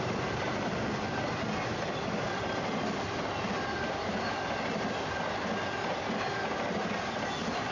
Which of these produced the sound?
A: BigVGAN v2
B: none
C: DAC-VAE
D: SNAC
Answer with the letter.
B